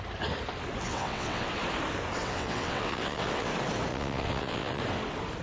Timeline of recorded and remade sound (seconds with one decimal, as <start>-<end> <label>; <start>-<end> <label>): 0.0-0.9 recorded; 0.9-1.5 remade; 1.5-2.2 recorded; 2.2-3.5 remade; 3.5-3.9 recorded; 3.9-4.8 remade; 4.8-5.4 recorded